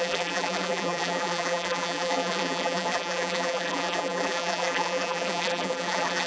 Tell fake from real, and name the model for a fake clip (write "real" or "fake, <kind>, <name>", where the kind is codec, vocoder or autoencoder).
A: fake, vocoder, BigVGAN v2